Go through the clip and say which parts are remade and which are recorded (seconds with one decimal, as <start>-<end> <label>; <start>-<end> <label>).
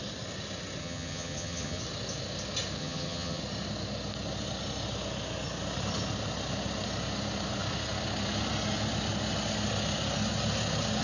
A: 0.0-0.8 recorded; 0.8-1.8 remade; 1.8-2.8 recorded; 2.8-3.4 remade; 3.4-11.0 recorded